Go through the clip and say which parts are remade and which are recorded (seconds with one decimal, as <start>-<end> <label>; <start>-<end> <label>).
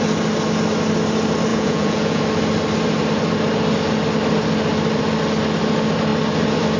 0.0-1.5 recorded; 1.5-2.2 remade; 2.2-6.8 recorded